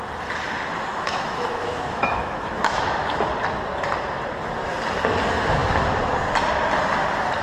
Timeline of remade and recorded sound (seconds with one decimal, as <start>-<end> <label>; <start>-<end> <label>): 0.0-0.9 recorded; 0.9-3.0 remade; 3.0-7.4 recorded